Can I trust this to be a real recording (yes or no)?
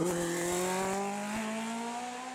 yes